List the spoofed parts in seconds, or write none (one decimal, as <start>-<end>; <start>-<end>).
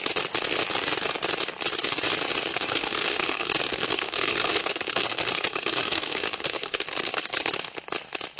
2.5-7.5